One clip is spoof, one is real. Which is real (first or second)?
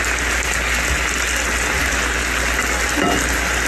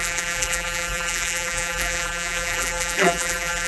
first